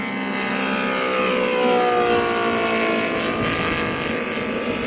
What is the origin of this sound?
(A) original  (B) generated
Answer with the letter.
A